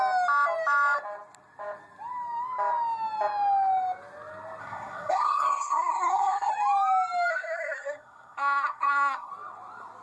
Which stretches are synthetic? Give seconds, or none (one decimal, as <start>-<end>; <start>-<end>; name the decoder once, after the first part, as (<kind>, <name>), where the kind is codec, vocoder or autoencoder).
4.6-6.5 (codec, SNAC); 7.3-9.3